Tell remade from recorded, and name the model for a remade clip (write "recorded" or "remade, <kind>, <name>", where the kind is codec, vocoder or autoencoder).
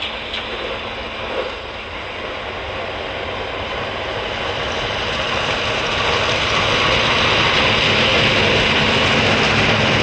recorded